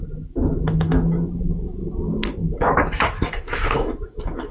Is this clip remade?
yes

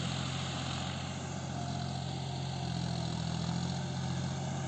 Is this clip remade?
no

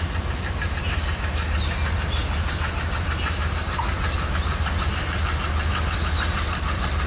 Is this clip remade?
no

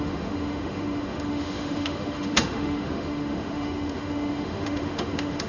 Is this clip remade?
yes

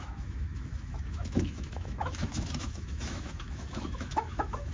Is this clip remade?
yes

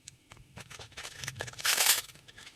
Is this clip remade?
yes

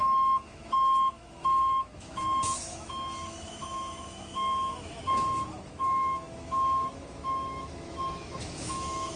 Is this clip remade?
yes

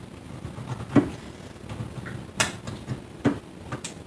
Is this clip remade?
no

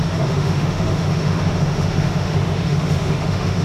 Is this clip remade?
yes